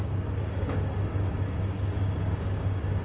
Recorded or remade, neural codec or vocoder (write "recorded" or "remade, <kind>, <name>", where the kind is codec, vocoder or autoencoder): remade, codec, DAC